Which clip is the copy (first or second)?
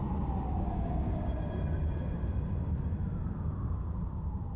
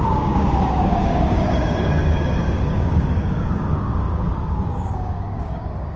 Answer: second